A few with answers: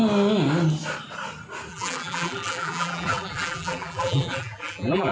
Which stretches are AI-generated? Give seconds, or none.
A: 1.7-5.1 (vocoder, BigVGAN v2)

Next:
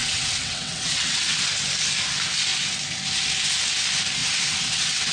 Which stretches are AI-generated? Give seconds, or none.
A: 0.0-1.4 (vocoder, WaveNeXt); 4.2-5.1

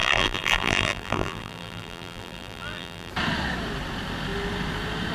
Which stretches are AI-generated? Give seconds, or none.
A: 0.0-3.1 (vocoder, BigVGAN v2)